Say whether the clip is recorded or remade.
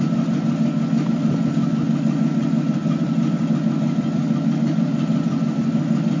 recorded